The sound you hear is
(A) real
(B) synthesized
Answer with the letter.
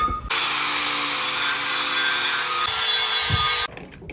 A